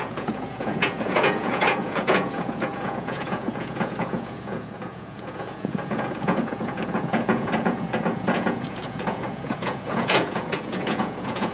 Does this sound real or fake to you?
fake